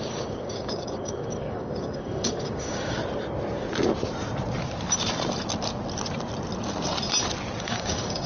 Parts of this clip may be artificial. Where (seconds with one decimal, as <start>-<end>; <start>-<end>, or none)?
0.0-3.0; 7.6-8.3

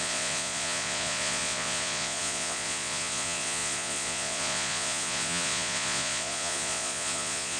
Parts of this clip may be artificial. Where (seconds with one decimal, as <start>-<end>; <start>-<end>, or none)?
0.0-7.6

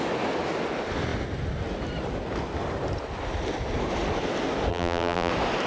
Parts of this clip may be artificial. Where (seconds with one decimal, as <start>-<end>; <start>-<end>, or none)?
4.7-5.3

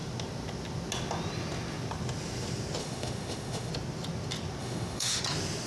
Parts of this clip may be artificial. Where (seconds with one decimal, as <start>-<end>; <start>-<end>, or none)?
2.8-3.7; 4.6-5.2

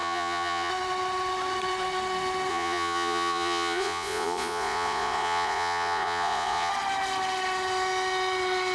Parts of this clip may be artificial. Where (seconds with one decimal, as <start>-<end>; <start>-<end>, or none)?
0.0-0.7; 2.5-6.7

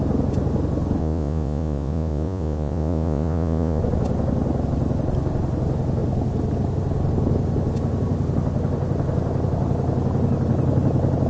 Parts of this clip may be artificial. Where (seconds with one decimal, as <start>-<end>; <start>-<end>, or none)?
1.0-3.8

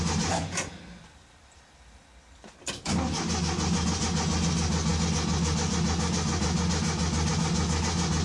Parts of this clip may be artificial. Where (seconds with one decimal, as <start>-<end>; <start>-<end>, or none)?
none

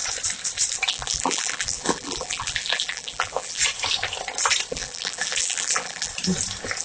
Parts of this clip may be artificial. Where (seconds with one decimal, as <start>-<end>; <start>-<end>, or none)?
0.9-3.6; 4.7-6.1